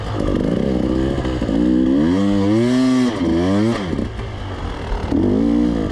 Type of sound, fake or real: real